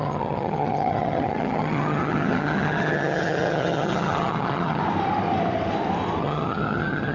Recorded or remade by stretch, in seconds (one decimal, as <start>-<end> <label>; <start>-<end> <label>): 0.0-4.8 remade; 4.8-6.2 recorded; 6.2-7.1 remade